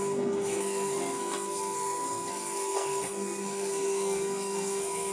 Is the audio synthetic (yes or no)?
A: yes